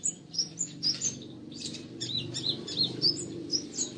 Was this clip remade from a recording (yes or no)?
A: yes